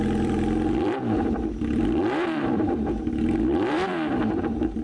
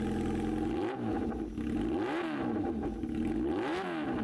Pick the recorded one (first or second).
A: second